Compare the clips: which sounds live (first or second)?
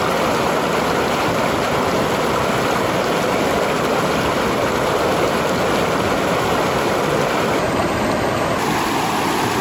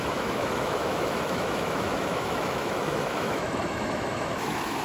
first